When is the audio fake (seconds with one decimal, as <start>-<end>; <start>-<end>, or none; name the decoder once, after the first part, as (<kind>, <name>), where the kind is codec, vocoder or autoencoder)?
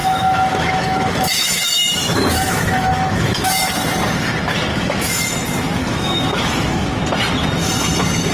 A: 0.0-3.7 (autoencoder, DAC-VAE); 4.7-5.3; 5.8-7.0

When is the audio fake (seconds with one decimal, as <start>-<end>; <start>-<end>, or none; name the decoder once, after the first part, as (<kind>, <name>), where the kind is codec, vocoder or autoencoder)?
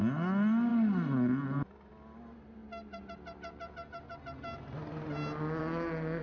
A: none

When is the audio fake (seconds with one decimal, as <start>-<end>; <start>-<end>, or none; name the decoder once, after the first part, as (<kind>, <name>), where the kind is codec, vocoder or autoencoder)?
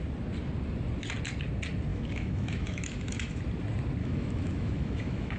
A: 1.9-3.4 (autoencoder, DAC-VAE); 4.0-5.4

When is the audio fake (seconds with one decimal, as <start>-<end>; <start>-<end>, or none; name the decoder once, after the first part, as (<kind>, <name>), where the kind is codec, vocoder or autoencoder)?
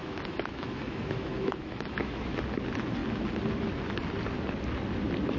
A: 0.0-2.4 (autoencoder, DAC-VAE)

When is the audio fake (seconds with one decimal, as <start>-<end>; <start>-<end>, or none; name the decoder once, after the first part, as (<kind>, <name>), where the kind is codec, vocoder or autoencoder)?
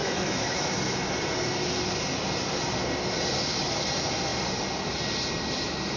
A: 0.0-0.7 (autoencoder, DAC-VAE)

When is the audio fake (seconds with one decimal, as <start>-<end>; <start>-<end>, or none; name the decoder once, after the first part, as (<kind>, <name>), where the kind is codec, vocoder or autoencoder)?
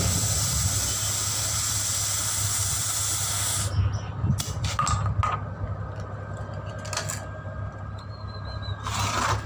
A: none